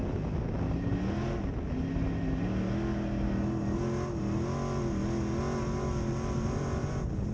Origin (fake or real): real